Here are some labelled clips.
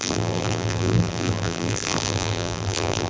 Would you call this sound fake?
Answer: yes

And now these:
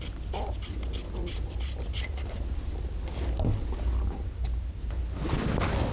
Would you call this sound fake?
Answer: no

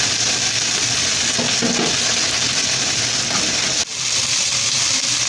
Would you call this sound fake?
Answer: no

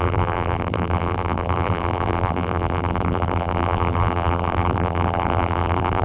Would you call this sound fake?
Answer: yes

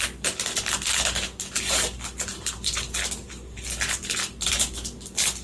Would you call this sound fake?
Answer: yes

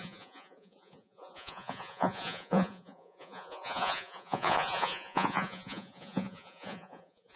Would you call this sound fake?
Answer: yes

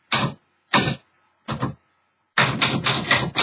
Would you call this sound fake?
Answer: no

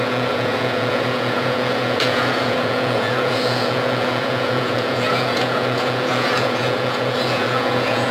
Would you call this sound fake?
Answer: yes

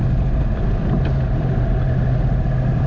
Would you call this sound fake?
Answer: no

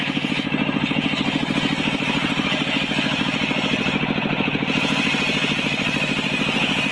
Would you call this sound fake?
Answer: no